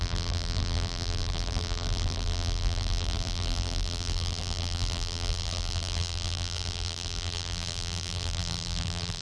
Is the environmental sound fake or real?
fake